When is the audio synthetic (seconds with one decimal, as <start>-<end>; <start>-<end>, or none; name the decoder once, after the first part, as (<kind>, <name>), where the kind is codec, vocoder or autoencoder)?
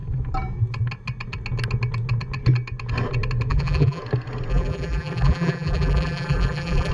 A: 3.5-4.0 (vocoder, BigVGAN v2); 4.5-6.9